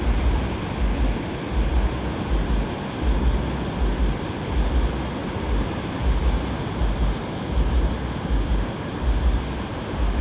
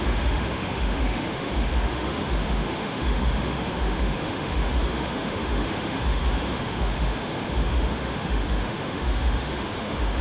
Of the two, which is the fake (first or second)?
second